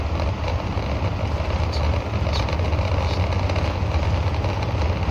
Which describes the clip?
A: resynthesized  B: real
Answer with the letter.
B